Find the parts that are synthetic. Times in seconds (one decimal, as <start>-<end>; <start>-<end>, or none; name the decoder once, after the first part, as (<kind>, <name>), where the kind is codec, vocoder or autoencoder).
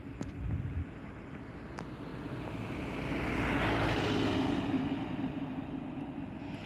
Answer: none